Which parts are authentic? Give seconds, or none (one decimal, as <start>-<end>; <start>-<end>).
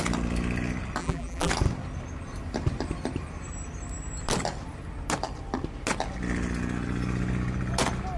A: 0.0-1.0; 1.5-8.2